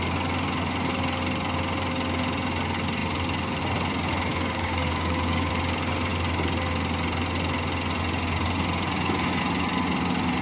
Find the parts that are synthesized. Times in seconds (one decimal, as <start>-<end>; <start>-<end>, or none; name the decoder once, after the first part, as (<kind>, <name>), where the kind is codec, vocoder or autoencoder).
4.3-5.5 (codec, DAC)